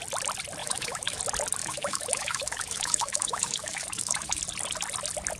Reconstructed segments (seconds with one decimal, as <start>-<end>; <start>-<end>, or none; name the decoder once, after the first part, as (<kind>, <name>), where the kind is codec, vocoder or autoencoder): 0.6-1.2 (autoencoder, DAC-VAE); 1.6-4.4